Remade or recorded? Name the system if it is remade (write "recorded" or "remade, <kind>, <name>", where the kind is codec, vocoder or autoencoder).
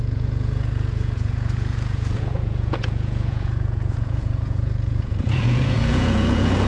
remade, vocoder, Vocos